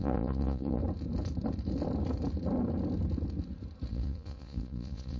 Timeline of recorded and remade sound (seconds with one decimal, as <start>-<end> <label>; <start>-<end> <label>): 0.0-0.8 remade; 0.8-3.9 recorded; 3.9-5.2 remade